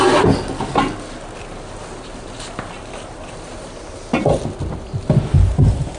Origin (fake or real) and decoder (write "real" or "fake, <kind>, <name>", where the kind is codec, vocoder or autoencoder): real